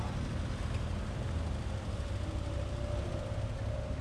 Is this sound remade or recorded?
recorded